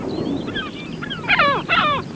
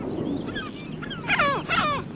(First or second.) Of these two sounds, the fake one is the first